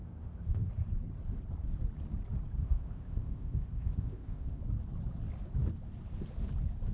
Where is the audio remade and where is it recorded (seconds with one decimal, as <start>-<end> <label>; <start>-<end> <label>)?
0.0-0.7 remade; 0.7-2.6 recorded; 2.6-4.6 remade; 4.6-6.9 recorded